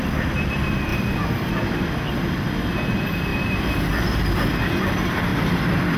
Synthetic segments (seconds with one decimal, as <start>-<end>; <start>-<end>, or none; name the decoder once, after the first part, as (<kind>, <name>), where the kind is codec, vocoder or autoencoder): 0.9-1.5 (vocoder, BigVGAN v2); 3.3-4.7; 5.3-6.0